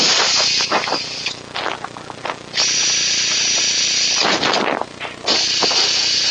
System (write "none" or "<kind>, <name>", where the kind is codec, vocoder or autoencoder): none